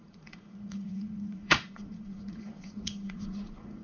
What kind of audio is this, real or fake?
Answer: fake